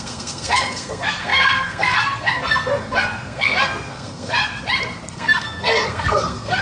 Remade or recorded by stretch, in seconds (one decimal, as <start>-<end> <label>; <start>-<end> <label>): 0.0-4.4 remade; 4.4-5.1 recorded; 5.1-6.6 remade